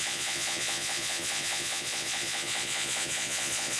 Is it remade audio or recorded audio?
remade